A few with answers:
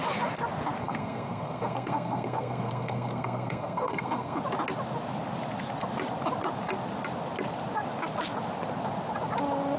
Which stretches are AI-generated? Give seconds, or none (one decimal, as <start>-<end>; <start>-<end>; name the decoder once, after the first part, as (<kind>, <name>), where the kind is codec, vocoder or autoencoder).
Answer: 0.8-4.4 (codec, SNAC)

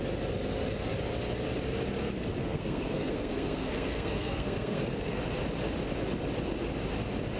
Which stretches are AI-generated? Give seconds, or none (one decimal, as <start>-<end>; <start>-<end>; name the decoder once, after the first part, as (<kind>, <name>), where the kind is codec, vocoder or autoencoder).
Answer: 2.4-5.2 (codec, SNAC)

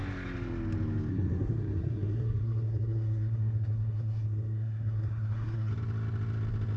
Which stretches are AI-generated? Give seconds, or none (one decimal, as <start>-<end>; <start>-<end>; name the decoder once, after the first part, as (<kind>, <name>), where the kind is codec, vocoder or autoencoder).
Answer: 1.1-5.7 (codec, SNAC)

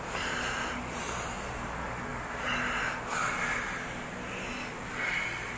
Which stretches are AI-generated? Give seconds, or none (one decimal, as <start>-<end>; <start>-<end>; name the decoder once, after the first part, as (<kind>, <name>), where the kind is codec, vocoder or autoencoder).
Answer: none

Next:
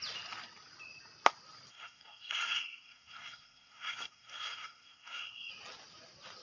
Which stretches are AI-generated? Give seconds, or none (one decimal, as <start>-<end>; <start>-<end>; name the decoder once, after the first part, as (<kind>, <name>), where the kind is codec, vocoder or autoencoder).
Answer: 1.7-5.5 (codec, SNAC)